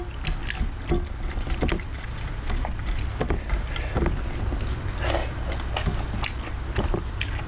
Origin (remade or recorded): recorded